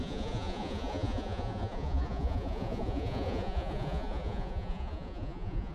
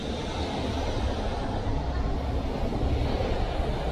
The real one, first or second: second